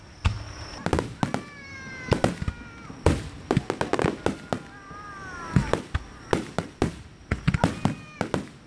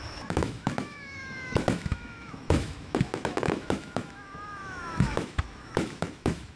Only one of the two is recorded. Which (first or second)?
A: first